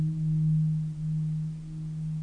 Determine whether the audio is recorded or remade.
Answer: recorded